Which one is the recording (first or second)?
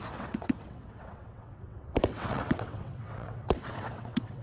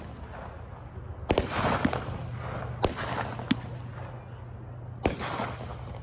second